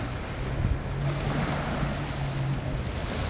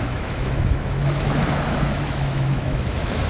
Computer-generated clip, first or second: second